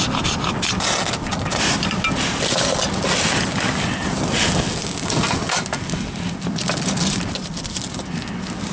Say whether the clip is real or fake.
real